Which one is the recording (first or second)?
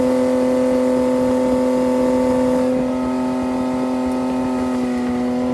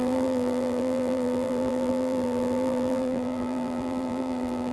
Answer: first